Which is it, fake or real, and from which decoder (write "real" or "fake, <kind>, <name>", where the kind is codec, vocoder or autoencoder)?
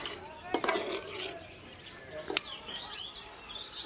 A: real